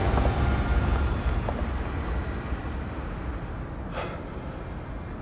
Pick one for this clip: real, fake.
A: real